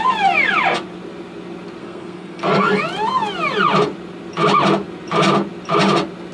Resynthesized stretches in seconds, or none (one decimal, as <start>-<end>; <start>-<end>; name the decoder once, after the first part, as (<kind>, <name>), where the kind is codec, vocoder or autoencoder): 1.8-2.8 (codec, SNAC)